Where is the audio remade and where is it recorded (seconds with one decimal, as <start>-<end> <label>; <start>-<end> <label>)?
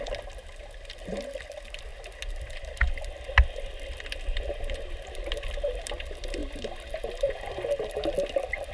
0.0-8.7 recorded